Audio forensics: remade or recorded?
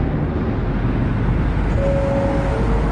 recorded